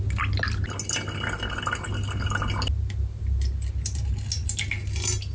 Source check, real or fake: real